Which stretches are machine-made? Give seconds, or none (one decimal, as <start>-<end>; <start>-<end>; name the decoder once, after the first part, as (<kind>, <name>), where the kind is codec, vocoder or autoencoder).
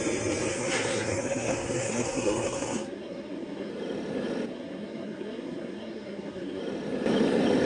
0.5-3.7 (codec, SNAC); 4.5-6.6